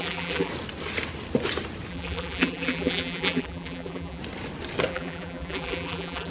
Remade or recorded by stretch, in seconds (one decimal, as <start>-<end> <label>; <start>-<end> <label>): 0.0-0.5 remade; 0.5-1.9 recorded; 1.9-4.2 remade; 4.2-4.9 recorded; 4.9-6.3 remade